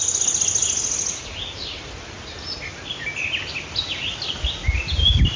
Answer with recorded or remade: recorded